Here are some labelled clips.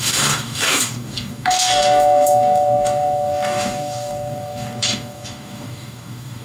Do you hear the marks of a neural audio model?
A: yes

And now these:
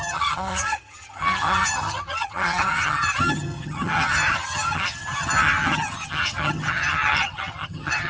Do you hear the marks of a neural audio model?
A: yes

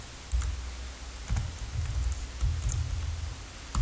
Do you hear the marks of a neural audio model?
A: no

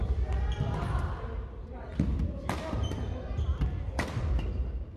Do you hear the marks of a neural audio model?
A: no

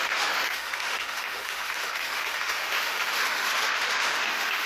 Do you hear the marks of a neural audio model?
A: yes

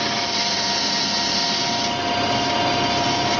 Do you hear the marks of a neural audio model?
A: no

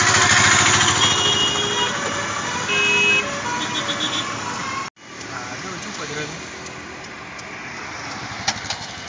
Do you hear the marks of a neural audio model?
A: no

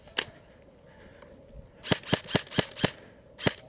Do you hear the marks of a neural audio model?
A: no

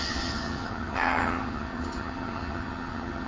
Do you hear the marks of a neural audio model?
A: yes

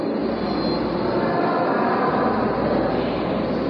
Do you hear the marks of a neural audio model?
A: no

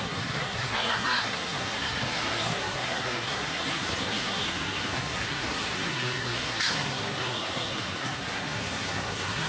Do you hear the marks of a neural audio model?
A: yes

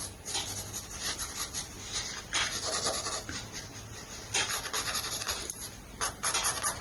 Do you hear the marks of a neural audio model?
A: no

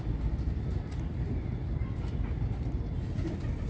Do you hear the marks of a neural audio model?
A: no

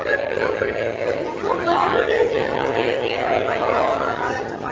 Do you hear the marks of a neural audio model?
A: yes